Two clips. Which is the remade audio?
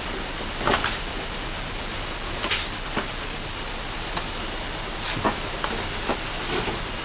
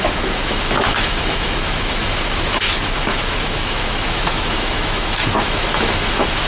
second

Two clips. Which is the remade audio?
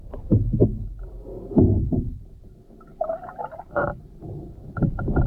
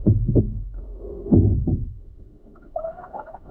second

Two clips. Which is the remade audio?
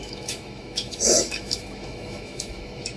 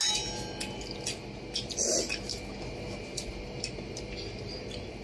first